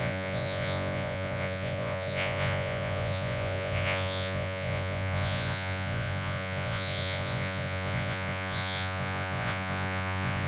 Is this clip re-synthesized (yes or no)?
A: yes